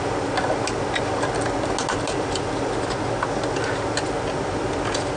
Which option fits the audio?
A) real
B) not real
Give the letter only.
A